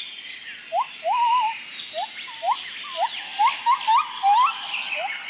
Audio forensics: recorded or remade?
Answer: recorded